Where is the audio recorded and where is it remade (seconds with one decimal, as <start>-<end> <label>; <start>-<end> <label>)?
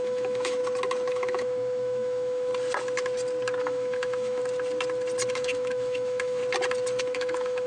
0.0-0.6 remade; 0.6-1.1 recorded; 1.1-2.5 remade; 2.5-3.6 recorded; 3.6-4.4 remade; 4.4-5.3 recorded; 5.3-6.4 remade; 6.4-7.0 recorded; 7.0-7.7 remade